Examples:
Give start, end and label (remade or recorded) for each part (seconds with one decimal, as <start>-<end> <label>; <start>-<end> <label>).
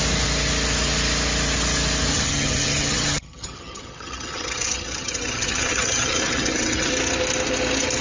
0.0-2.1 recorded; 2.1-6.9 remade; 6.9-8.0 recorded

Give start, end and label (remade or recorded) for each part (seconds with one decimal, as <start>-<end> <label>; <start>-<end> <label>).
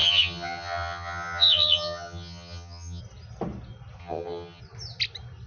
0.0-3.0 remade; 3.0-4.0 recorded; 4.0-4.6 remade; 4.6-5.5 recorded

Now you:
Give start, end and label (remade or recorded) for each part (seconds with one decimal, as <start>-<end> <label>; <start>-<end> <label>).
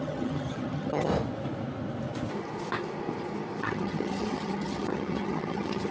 0.0-1.1 remade; 1.1-3.6 recorded; 3.6-5.9 remade